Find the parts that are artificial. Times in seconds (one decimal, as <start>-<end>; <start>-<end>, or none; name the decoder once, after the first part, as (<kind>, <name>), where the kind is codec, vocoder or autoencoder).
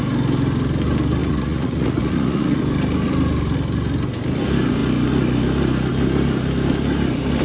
1.2-2.6 (vocoder, Vocos)